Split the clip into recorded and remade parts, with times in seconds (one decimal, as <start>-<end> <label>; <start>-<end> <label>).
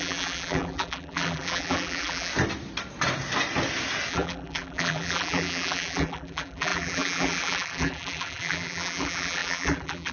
0.0-2.3 remade; 2.3-4.1 recorded; 4.1-10.1 remade